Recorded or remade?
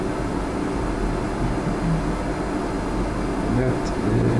recorded